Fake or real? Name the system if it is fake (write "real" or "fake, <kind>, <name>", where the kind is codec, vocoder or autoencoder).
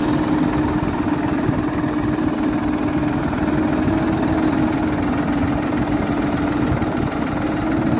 real